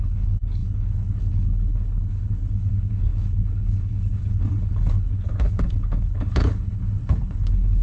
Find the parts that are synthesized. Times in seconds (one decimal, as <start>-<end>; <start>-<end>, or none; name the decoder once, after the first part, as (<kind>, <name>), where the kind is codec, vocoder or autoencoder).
0.0-7.8 (codec, HILCodec)